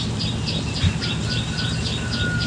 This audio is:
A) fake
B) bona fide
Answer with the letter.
B